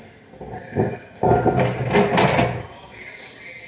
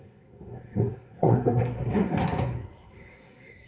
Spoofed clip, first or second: second